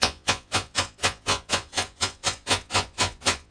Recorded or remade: remade